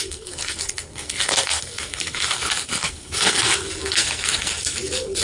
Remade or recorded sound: remade